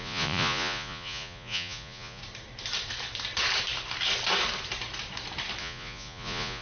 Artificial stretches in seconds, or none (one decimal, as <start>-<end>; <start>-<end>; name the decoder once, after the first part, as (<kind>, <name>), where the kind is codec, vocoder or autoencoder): 0.0-2.2 (vocoder, Vocos); 5.6-6.6